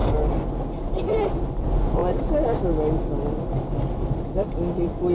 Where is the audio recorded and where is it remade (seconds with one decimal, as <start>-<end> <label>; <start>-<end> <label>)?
0.0-5.1 recorded